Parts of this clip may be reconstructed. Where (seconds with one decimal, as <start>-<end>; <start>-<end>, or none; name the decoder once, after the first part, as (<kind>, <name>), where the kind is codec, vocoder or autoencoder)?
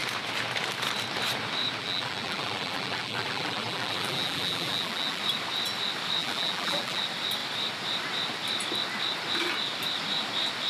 1.8-5.2 (vocoder, BigVGAN v2); 6.2-7.0